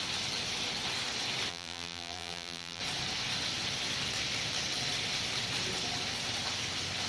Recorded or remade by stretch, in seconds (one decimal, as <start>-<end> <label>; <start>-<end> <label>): 0.0-1.5 recorded; 1.5-2.8 remade; 2.8-7.1 recorded